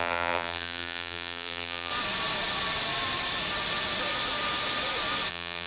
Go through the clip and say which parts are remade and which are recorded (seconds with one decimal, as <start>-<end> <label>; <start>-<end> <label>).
0.0-1.9 remade; 1.9-5.3 recorded; 5.3-5.7 remade